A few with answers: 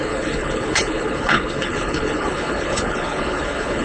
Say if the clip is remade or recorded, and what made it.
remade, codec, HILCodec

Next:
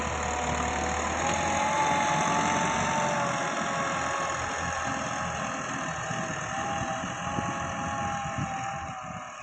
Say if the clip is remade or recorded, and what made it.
recorded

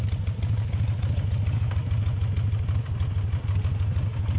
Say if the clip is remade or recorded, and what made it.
recorded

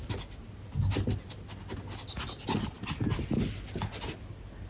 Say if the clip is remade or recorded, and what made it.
recorded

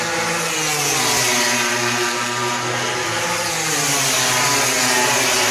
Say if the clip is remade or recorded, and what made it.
recorded